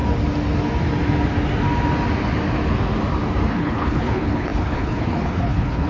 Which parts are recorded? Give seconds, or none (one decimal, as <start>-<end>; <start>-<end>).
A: 0.0-3.5